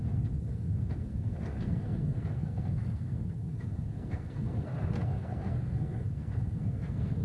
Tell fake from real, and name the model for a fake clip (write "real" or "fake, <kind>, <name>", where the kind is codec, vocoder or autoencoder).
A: fake, codec, SNAC